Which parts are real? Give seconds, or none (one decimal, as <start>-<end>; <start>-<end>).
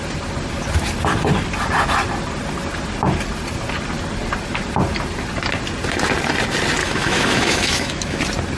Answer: 0.0-6.8; 8.2-8.6